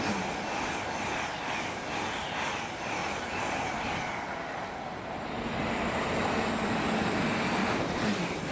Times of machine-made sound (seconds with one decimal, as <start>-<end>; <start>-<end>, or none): 3.0-6.5; 7.6-8.5